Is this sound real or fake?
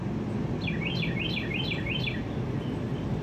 real